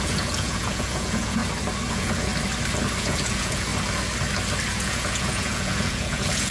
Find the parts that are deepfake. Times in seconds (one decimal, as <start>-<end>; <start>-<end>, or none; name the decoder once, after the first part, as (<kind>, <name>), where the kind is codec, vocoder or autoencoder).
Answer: 0.0-1.4 (vocoder, Vocos); 1.9-2.3; 3.0-3.7; 4.7-6.5